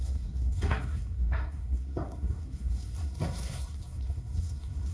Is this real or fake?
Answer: fake